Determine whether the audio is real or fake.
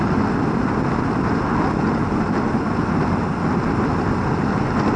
real